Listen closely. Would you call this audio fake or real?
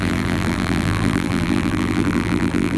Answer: fake